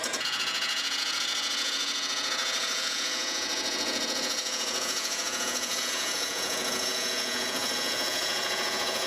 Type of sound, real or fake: fake